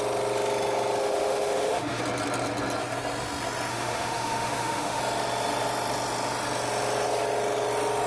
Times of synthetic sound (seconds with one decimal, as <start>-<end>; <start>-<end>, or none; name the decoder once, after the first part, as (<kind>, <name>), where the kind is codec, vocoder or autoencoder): 1.0-2.0 (autoencoder, DAC-VAE); 3.7-5.0